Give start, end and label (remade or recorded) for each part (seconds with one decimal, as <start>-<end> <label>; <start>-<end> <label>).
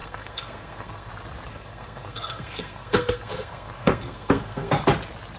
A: 0.0-1.1 remade; 1.1-1.5 recorded; 1.5-4.7 remade; 4.7-5.4 recorded